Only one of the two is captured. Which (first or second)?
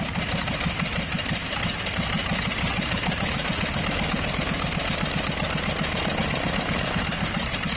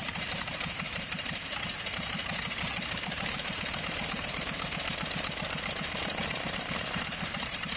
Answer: first